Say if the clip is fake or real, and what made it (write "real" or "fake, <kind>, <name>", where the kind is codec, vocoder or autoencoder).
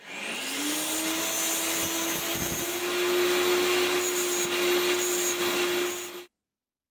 real